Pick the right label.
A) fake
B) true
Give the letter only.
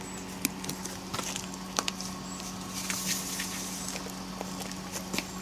B